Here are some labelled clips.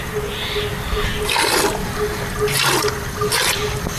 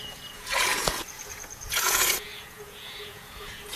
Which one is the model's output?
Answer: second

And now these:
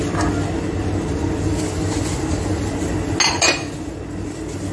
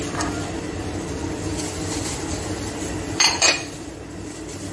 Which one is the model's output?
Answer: second